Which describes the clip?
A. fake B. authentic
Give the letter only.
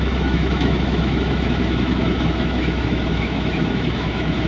A